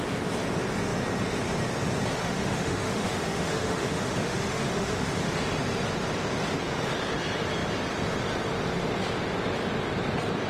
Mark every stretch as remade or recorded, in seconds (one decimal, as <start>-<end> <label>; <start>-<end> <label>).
0.0-2.2 recorded; 2.2-5.1 remade; 5.1-10.5 recorded